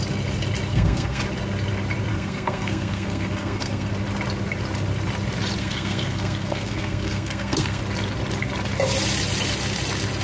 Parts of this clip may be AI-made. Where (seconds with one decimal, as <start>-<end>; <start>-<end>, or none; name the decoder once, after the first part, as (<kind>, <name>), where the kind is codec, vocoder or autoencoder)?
0.7-1.2 (codec, SNAC); 2.1-3.9; 5.6-7.8

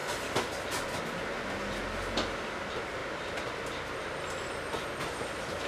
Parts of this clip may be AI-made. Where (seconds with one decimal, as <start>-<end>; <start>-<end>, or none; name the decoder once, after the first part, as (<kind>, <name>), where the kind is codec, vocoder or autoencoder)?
0.0-1.0 (vocoder, BigVGAN v2)

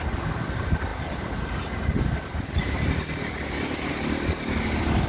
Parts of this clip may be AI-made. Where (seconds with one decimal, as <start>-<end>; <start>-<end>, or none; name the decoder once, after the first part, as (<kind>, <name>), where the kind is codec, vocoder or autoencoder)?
none